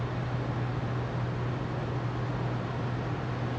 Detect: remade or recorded recorded